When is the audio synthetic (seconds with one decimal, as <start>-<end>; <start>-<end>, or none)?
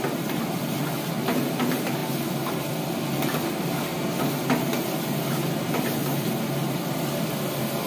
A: none